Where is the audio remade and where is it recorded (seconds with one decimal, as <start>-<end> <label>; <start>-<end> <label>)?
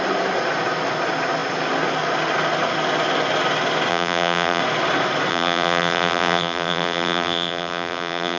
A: 0.0-3.9 recorded; 3.9-4.6 remade; 4.6-5.3 recorded; 5.3-8.4 remade